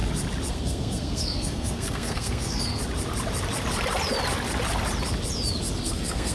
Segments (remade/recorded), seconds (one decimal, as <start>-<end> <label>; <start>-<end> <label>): 0.0-0.5 recorded; 0.5-2.8 remade; 2.8-5.8 recorded; 5.8-6.3 remade